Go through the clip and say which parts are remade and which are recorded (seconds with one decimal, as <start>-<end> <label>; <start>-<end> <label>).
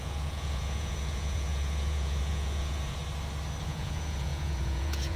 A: 0.0-3.0 remade; 3.0-3.6 recorded; 3.6-5.2 remade